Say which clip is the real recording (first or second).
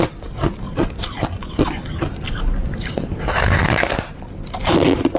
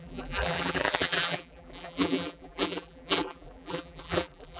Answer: first